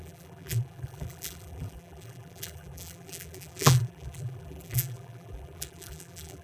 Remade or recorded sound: remade